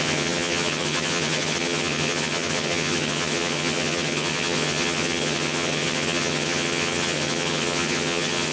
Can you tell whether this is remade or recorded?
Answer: remade